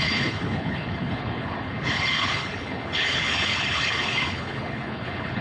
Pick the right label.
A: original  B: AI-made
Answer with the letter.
B